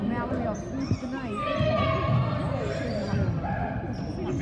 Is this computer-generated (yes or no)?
no